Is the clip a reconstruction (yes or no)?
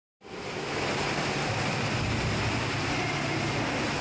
yes